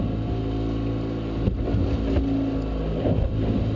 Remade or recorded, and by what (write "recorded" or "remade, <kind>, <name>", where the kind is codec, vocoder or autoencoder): recorded